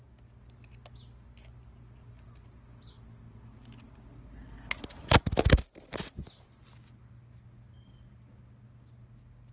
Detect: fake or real real